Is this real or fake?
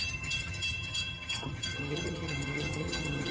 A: fake